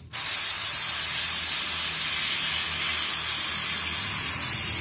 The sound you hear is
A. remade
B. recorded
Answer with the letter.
B